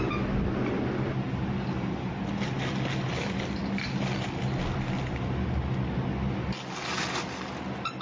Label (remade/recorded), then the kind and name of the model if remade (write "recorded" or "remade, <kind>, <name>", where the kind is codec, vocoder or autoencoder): recorded